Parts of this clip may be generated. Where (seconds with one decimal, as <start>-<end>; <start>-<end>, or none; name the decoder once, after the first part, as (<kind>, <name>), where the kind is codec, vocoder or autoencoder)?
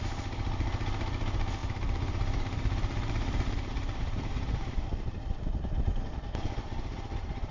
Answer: 1.6-6.1 (vocoder, BigVGAN v2)